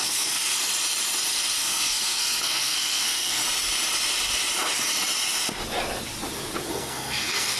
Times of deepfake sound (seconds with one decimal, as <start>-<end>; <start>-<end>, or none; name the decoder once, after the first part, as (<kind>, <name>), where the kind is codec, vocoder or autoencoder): 0.0-0.7 (codec, SNAC); 1.6-3.4; 6.7-7.6

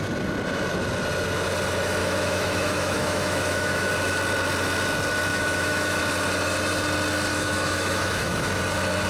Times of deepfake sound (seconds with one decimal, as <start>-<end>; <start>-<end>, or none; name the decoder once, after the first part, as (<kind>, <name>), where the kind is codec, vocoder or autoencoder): 2.0-3.9 (autoencoder, DAC-VAE); 5.3-6.0; 7.3-8.5

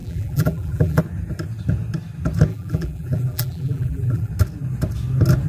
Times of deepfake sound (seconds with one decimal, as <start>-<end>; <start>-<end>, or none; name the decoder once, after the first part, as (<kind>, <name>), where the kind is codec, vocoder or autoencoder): 0.0-1.0 (vocoder, BigVGAN v2); 2.5-4.3